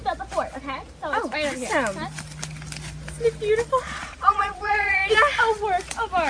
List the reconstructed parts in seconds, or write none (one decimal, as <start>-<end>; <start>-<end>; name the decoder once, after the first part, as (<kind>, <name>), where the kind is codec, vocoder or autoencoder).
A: 3.8-5.0 (vocoder, Vocos)